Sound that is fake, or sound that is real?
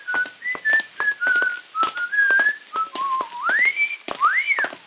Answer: real